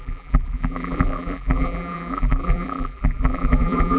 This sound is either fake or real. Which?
fake